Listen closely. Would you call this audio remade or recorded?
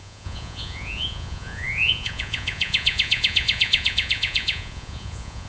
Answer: remade